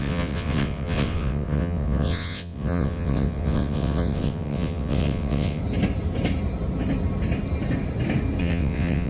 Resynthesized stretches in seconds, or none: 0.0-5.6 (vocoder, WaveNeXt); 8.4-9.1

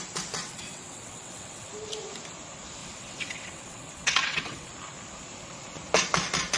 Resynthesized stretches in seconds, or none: 0.4-1.7 (vocoder, WaveNeXt); 2.8-4.7

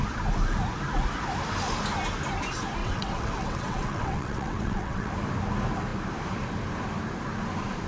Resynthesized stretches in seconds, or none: 2.8-5.1 (vocoder, WaveNeXt)

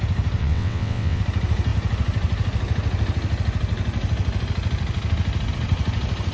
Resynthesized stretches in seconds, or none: 0.4-1.2 (vocoder, WaveNeXt)

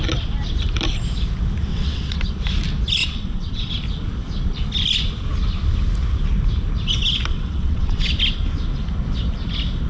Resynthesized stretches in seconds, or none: 1.7-2.2 (vocoder, WaveNeXt); 3.0-3.7; 7.3-8.1

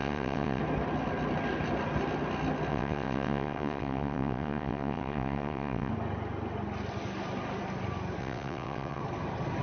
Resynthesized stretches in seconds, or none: 0.0-0.6 (vocoder, WaveNeXt); 2.7-5.9; 8.2-9.0

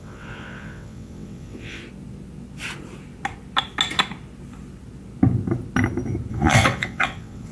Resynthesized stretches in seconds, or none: 0.0-1.8 (vocoder, WaveNeXt); 6.3-7.5

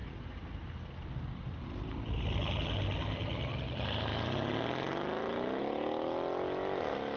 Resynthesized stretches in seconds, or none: none